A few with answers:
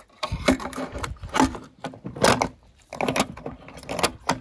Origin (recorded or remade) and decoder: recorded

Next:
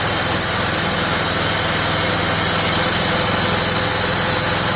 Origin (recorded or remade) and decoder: recorded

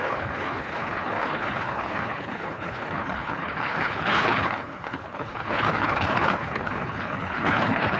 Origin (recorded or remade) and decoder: remade, codec, HILCodec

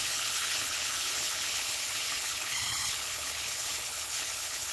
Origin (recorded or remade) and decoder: remade, codec, HILCodec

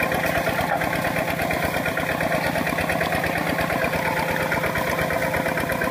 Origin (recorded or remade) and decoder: recorded